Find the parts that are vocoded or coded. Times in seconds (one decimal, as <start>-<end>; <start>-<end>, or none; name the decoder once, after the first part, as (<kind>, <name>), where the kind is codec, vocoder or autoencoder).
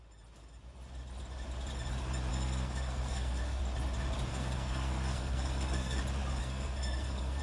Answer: 2.3-3.6 (codec, SNAC); 4.3-6.0; 6.4-7.4